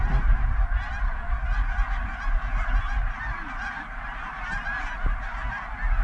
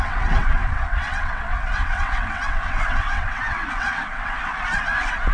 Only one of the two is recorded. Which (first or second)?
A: first